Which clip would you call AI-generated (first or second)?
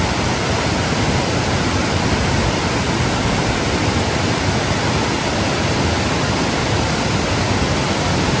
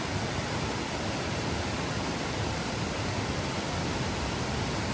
second